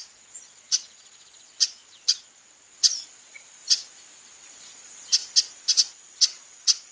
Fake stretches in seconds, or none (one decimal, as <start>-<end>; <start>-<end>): 0.0-3.6; 4.4-5.2; 5.9-6.9